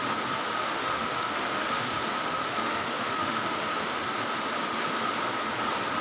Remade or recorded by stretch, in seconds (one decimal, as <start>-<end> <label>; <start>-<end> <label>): 0.0-0.5 recorded; 0.5-4.1 remade; 4.1-6.0 recorded